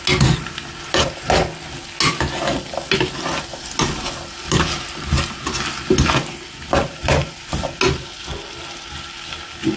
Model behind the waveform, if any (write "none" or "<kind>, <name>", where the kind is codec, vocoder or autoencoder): none